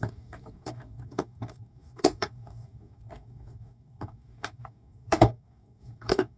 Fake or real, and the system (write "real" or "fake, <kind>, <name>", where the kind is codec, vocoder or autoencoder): fake, codec, DAC